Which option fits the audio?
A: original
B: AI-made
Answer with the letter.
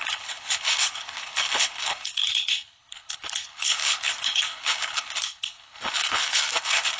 B